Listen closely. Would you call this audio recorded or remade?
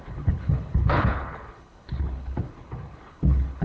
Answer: remade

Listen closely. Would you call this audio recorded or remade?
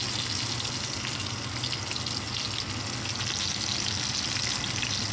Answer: recorded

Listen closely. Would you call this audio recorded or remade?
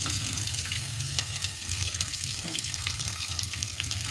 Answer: remade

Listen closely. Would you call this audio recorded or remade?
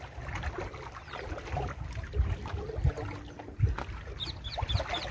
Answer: recorded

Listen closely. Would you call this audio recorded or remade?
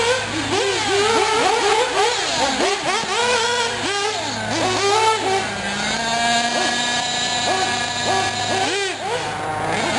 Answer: recorded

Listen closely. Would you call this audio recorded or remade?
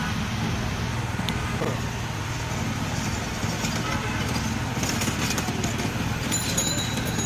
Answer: recorded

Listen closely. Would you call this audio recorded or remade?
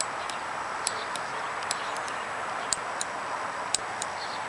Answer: recorded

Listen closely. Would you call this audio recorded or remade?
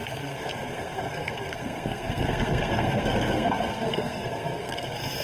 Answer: remade